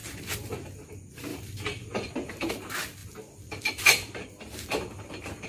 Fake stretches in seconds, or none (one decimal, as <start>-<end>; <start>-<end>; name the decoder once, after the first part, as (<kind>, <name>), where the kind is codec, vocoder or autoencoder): 0.0-0.9 (vocoder, BigVGAN v2); 1.3-2.5; 3.0-5.5